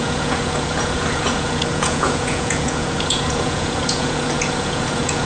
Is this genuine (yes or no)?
no